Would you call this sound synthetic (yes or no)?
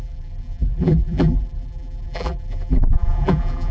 yes